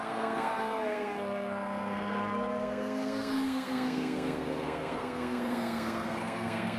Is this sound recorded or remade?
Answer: remade